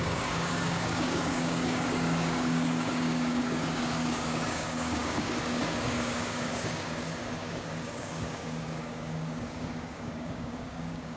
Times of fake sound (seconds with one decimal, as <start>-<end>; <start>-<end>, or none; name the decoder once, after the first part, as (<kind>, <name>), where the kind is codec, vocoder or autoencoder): 0.0-11.2 (codec, DAC)